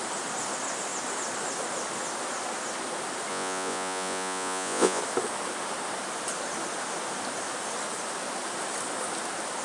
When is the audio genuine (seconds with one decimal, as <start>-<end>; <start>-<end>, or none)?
0.0-3.3; 5.0-9.6